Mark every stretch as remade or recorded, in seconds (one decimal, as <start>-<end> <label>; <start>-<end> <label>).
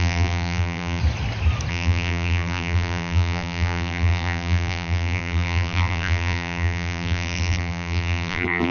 0.0-1.0 remade; 1.0-1.7 recorded; 1.7-8.7 remade